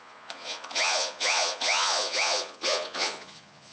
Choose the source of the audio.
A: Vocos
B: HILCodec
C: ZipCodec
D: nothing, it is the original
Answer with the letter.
A